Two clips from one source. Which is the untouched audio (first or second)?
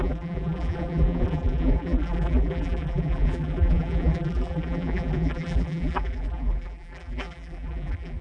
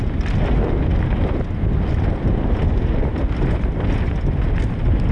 second